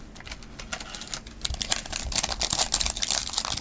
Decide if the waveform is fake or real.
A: real